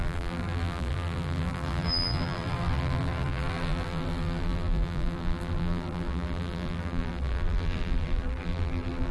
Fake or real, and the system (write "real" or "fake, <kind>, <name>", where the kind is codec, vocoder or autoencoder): fake, vocoder, BigVGAN v2